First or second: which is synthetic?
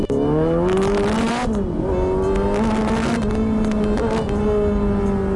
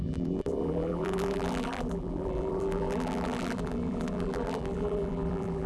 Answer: second